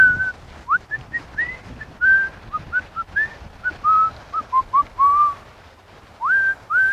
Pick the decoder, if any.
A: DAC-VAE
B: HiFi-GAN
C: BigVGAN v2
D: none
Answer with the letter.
D